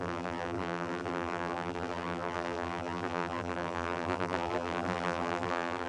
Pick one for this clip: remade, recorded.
remade